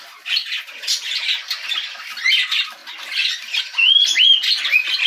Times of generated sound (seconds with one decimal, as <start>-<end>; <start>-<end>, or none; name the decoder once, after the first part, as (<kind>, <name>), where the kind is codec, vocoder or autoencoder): none